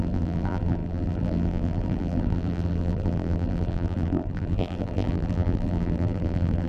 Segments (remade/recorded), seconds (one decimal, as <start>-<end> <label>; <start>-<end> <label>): 0.0-6.7 remade